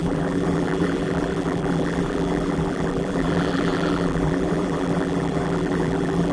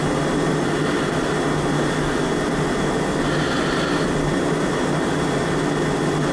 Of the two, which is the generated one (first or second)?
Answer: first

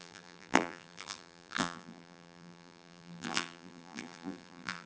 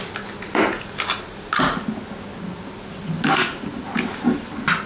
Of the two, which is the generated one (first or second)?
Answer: first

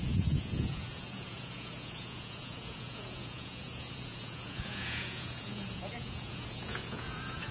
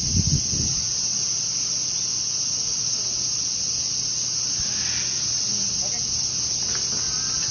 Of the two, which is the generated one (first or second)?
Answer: first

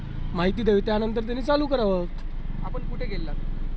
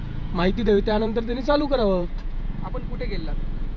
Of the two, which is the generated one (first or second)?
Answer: second